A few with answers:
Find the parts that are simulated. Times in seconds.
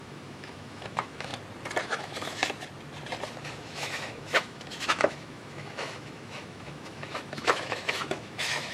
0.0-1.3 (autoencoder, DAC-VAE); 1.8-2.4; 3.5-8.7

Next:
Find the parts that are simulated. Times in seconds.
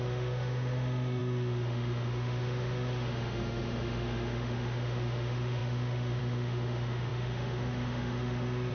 0.0-8.7 (autoencoder, DAC-VAE)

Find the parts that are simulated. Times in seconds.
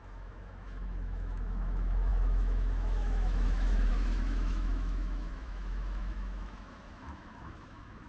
0.0-8.1 (autoencoder, DAC-VAE)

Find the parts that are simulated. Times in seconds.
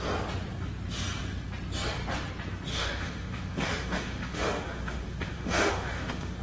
2.7-6.4 (autoencoder, DAC-VAE)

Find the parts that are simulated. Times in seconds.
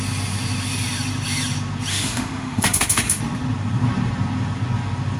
1.9-3.2 (autoencoder, DAC-VAE)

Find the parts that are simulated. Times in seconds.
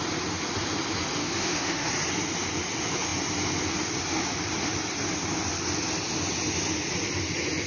1.2-1.9 (autoencoder, DAC-VAE)